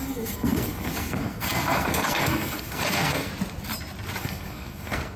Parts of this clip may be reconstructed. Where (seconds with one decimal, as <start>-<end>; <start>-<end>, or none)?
0.0-3.3; 4.2-5.2